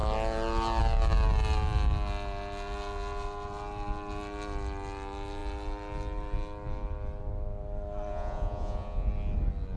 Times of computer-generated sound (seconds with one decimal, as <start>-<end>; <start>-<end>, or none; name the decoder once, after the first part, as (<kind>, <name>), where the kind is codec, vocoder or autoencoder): 8.1-9.1 (vocoder, Vocos)